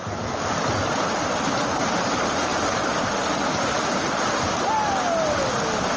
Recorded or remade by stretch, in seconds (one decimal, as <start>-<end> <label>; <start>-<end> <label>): 0.0-6.0 recorded